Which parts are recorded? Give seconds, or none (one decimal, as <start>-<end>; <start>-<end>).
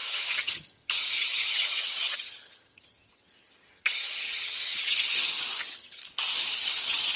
6.0-6.5